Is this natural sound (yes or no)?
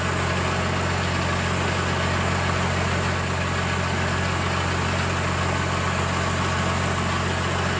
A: yes